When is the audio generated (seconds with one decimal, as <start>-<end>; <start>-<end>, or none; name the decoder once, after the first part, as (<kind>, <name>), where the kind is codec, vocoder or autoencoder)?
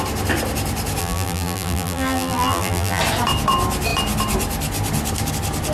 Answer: 1.0-3.0 (vocoder, BigVGAN v2)